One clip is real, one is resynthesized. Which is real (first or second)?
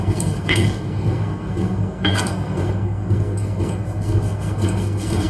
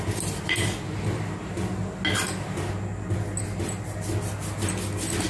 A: second